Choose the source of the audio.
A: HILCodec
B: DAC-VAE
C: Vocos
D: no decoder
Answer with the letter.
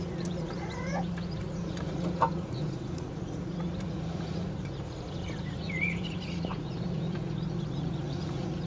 C